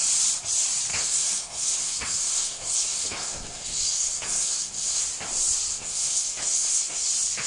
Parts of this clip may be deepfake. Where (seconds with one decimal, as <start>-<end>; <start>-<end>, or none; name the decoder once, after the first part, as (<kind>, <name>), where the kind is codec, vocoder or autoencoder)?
0.9-5.0 (codec, SNAC); 5.7-7.1